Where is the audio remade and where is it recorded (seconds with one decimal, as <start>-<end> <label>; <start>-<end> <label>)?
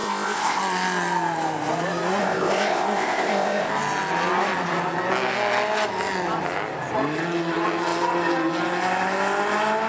0.0-0.6 remade; 0.6-2.2 recorded; 2.2-3.7 remade; 3.7-9.9 recorded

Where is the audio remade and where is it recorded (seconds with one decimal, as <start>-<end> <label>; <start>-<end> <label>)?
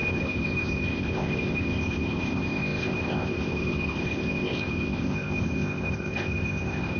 0.0-7.0 remade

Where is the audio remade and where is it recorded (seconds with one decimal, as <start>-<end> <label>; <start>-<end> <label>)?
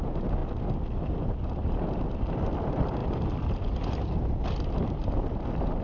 0.0-5.8 recorded